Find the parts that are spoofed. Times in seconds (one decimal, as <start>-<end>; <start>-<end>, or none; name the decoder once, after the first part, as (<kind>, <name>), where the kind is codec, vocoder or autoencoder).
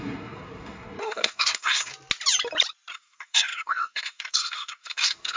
0.0-1.9 (codec, SNAC); 2.9-5.4